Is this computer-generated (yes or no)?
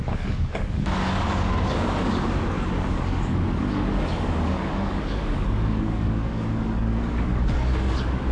yes